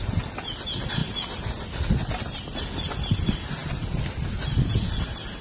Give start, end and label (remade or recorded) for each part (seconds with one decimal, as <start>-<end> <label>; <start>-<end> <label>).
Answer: 0.0-5.4 recorded